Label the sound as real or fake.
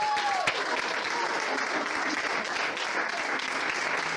real